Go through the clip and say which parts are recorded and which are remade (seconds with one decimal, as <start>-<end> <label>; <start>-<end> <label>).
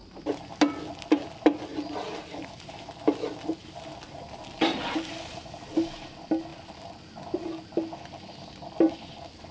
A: 0.0-1.7 recorded; 1.7-2.7 remade; 2.7-3.6 recorded; 3.6-6.1 remade; 6.1-9.5 recorded